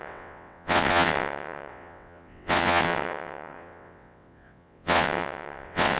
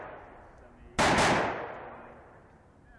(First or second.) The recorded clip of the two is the second